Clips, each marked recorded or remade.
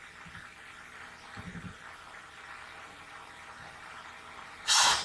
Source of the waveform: recorded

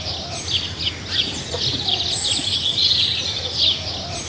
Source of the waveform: recorded